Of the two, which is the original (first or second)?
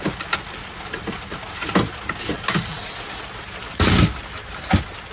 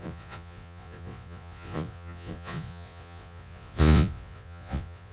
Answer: first